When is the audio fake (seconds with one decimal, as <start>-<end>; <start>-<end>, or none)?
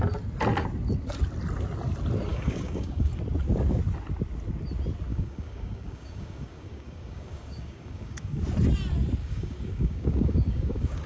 2.3-3.2; 5.1-8.4; 9.2-11.1